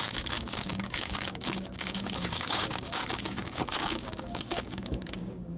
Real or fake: fake